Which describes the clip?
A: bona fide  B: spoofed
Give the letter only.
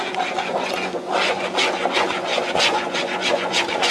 B